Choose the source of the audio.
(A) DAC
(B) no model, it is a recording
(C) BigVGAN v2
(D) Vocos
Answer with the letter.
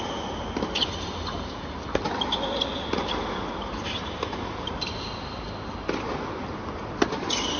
B